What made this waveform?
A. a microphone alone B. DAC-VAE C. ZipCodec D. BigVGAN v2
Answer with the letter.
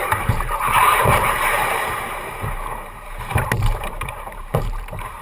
D